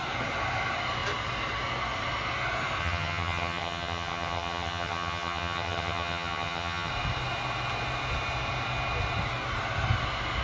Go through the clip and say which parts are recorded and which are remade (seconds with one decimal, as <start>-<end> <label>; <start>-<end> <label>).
0.0-2.8 recorded; 2.8-6.9 remade; 6.9-10.4 recorded